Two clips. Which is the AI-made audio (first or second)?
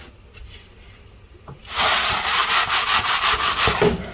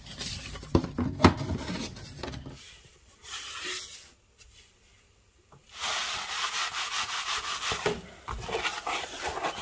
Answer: second